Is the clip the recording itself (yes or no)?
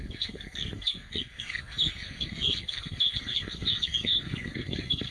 no